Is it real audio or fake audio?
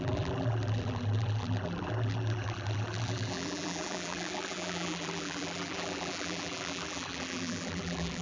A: fake